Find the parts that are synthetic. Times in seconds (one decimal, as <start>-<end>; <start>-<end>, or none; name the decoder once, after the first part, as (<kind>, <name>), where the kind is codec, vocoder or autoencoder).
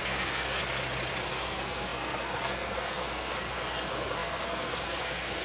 0.0-0.6 (codec, SNAC); 1.3-5.4